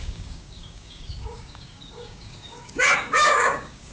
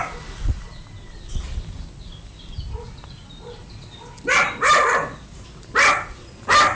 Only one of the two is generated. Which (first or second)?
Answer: first